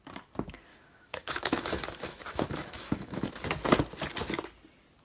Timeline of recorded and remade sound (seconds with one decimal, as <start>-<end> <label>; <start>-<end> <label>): 0.0-0.7 recorded; 0.7-3.4 remade; 3.4-5.0 recorded